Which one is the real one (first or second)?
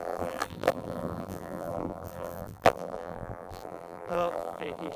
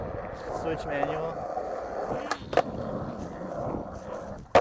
second